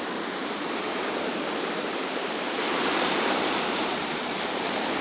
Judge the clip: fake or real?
fake